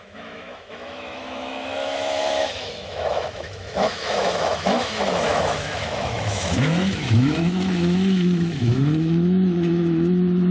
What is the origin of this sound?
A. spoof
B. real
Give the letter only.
A